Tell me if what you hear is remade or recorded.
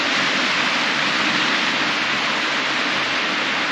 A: recorded